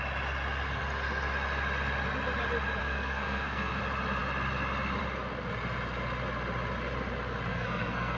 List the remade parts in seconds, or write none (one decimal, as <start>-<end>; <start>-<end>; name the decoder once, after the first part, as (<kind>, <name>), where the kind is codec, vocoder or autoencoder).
2.8-3.8 (codec, SNAC); 7.5-8.2